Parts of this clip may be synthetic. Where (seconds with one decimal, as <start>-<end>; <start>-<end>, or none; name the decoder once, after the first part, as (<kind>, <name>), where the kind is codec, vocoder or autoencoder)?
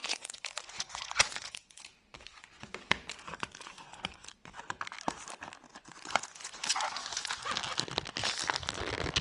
0.0-4.8 (vocoder, Vocos); 5.7-7.5